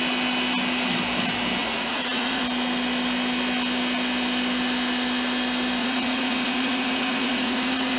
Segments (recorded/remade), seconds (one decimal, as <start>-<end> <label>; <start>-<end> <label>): 0.0-1.6 recorded; 1.6-2.4 remade; 2.4-5.8 recorded; 5.8-8.0 remade